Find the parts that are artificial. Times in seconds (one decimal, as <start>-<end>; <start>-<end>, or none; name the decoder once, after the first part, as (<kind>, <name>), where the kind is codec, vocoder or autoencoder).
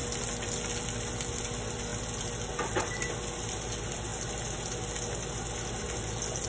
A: none